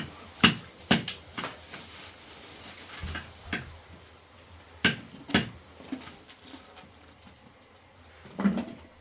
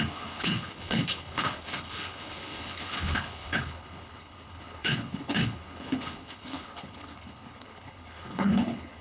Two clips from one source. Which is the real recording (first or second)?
first